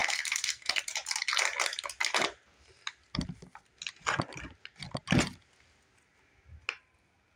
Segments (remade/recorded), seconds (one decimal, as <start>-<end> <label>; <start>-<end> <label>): 0.0-0.8 remade; 0.8-7.4 recorded